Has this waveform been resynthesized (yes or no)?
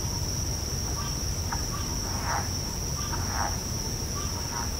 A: no